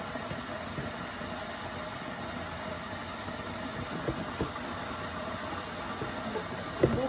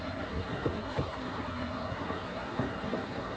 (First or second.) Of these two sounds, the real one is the first